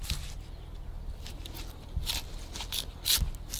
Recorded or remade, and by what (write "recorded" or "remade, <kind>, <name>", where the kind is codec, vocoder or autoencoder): recorded